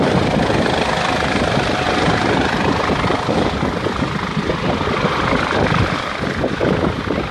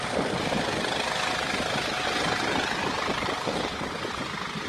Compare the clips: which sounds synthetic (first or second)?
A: first